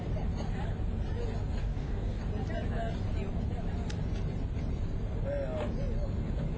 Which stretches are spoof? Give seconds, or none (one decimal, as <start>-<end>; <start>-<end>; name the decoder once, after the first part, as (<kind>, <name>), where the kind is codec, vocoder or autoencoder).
1.6-2.2 (codec, DAC)